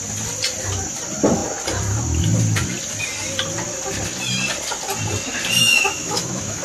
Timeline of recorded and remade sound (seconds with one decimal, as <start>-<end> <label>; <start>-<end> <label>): 0.0-5.6 recorded; 5.6-6.6 remade